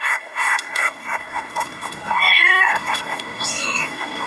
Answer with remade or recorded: remade